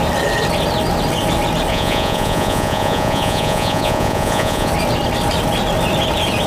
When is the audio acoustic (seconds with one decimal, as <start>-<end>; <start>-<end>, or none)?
0.0-1.7; 4.7-6.5